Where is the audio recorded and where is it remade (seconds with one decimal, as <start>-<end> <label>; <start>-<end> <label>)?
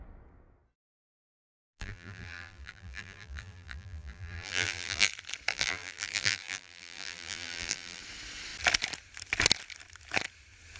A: 0.0-1.5 recorded; 1.5-5.1 remade; 5.1-5.5 recorded; 5.5-8.0 remade; 8.0-10.8 recorded